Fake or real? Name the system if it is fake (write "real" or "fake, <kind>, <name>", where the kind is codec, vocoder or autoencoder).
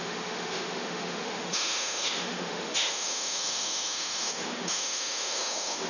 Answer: fake, autoencoder, DAC-VAE